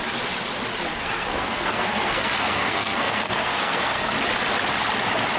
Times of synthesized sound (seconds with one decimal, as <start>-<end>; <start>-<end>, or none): 0.9-4.1